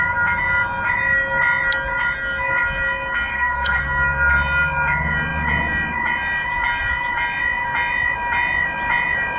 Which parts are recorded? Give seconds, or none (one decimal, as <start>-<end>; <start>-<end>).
0.0-3.3; 3.8-9.4